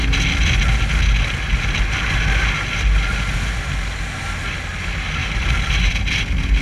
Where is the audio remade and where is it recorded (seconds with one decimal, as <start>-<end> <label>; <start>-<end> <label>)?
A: 0.0-5.2 recorded; 5.2-5.9 remade; 5.9-6.6 recorded